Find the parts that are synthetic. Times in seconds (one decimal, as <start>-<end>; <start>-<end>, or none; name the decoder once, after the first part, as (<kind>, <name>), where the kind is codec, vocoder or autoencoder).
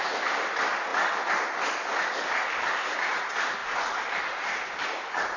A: none